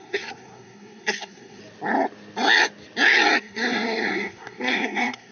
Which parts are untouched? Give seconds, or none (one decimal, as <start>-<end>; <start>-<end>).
1.6-3.4